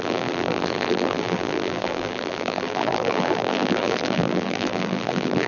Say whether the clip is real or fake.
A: fake